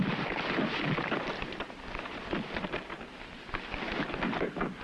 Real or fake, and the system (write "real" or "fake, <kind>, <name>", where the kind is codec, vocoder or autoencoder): fake, vocoder, BigVGAN v2